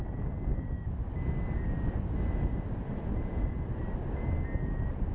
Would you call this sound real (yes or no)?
yes